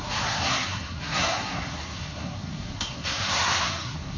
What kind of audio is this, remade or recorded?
remade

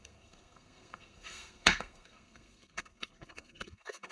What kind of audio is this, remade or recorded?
remade